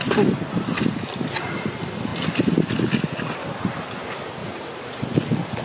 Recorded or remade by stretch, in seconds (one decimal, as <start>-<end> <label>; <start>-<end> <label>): 0.0-4.4 recorded; 4.4-5.0 remade; 5.0-5.6 recorded